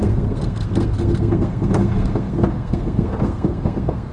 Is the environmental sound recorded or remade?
remade